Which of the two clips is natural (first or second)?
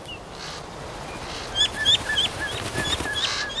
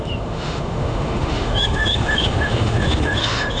first